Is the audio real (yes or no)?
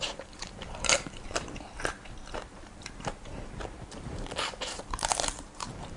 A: no